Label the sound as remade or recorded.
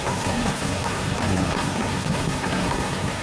remade